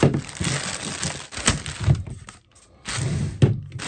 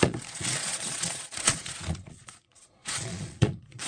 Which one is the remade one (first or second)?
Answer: second